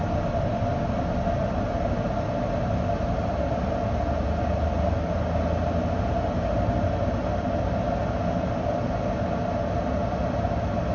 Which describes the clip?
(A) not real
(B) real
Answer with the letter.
B